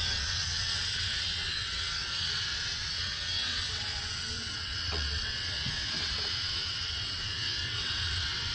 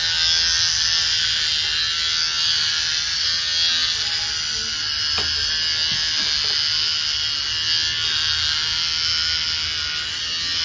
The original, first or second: second